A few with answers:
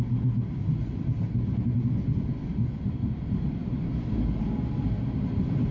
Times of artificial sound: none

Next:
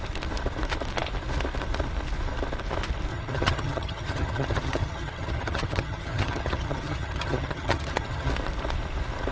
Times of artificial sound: 3.1-8.3 (vocoder, HiFi-GAN)

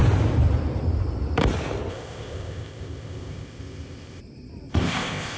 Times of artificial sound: 1.9-4.2 (codec, ZipCodec); 4.7-5.4

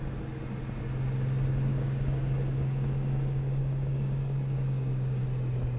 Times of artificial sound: 1.7-5.2 (codec, DAC)

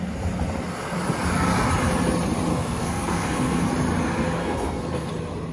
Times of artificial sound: 2.5-3.7 (codec, SNAC); 4.4-5.1

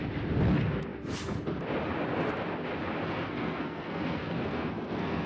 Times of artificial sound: 3.0-5.3 (codec, SNAC)

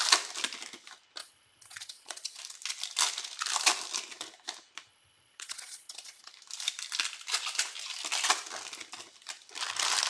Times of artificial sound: 1.2-2.4 (vocoder, Vocos); 4.9-6.3

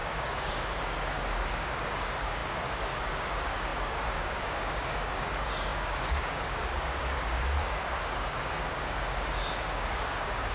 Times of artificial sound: 0.0-10.5 (codec, DAC)